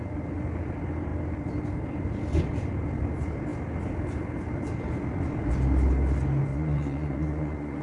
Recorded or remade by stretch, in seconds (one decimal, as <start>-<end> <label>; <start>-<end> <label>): 0.0-6.5 recorded; 6.5-7.8 remade